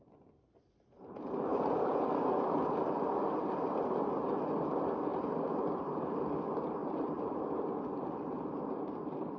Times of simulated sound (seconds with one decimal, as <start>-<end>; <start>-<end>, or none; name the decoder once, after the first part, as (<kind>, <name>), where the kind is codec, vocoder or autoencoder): 5.1-6.2 (vocoder, BigVGAN v2); 6.8-7.3